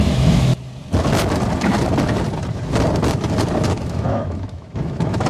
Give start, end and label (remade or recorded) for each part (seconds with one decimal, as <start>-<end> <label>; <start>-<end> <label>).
0.0-0.5 remade; 0.5-3.7 recorded; 3.7-5.3 remade